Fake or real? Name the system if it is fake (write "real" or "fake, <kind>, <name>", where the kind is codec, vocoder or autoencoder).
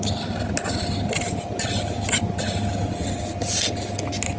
real